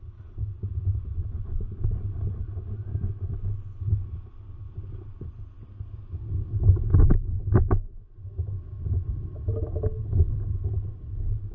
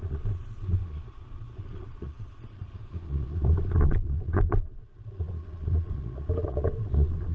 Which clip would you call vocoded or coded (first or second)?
second